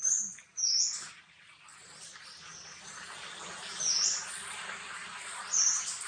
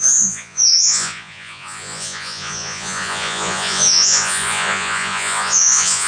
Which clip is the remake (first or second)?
second